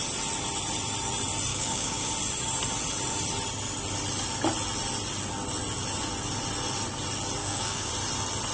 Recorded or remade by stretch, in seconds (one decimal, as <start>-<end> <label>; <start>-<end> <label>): 0.0-1.5 recorded; 1.5-2.1 remade; 2.1-7.4 recorded; 7.4-7.9 remade; 7.9-8.5 recorded